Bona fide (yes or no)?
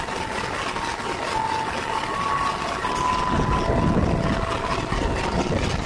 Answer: yes